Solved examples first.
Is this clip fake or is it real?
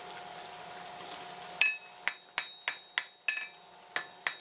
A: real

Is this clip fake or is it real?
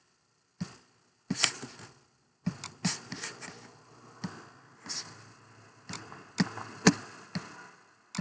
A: real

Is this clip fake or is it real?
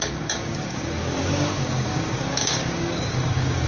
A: fake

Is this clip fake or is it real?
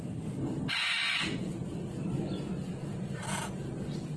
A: real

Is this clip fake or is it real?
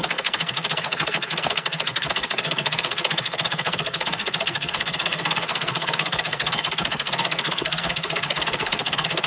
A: fake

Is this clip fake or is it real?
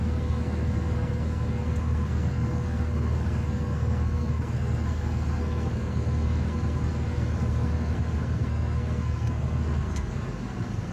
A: fake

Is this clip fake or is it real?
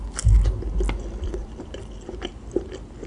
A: real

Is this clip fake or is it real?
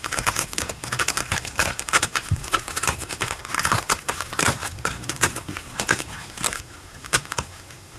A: fake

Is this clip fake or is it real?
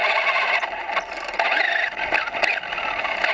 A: real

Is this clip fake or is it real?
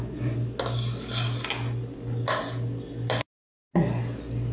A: real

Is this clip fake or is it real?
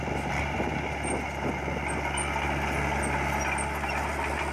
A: real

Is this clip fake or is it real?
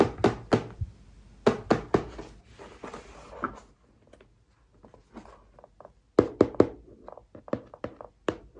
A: real